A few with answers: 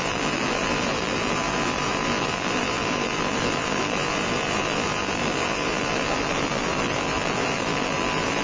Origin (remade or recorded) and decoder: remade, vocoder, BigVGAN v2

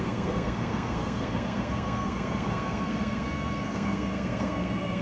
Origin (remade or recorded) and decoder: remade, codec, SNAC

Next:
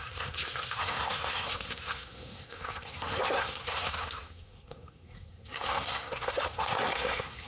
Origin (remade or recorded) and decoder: remade, codec, SNAC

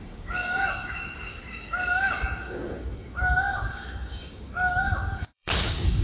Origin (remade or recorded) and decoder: remade, codec, DAC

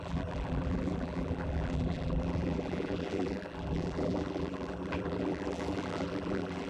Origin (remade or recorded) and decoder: remade, vocoder, BigVGAN v2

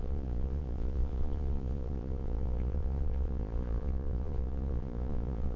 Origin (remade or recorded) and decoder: remade, vocoder, Vocos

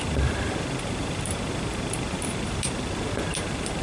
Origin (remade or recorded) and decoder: remade, vocoder, BigVGAN v2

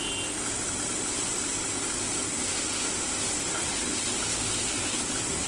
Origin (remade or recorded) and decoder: recorded